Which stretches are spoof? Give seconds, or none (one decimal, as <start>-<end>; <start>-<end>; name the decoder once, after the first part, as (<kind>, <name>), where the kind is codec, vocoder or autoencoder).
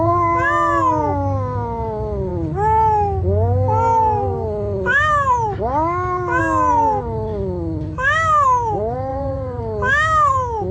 9.1-9.6 (vocoder, Vocos)